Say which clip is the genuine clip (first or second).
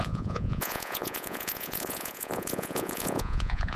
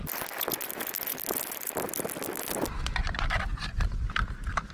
second